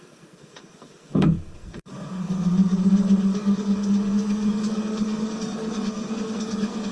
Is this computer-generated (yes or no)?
yes